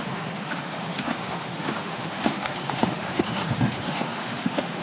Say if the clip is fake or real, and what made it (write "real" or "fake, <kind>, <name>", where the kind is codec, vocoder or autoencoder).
fake, autoencoder, DAC-VAE